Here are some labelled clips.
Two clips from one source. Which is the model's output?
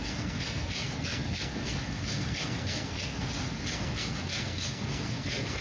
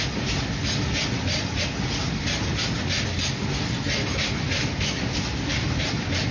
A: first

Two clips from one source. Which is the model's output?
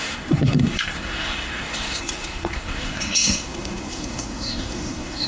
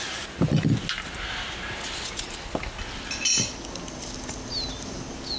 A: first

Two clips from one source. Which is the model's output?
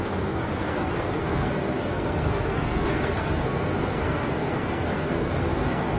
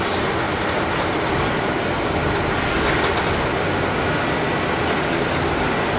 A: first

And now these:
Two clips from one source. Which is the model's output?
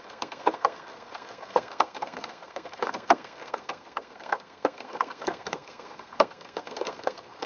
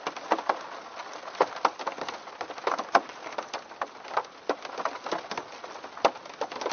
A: first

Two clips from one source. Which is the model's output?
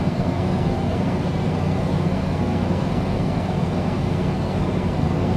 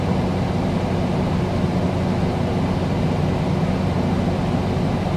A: first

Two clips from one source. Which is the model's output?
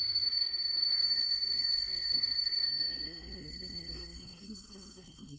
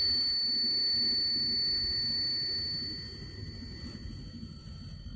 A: first